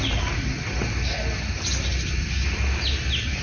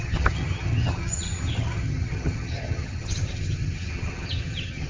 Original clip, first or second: first